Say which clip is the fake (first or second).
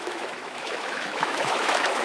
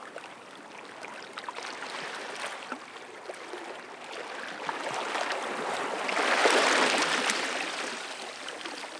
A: first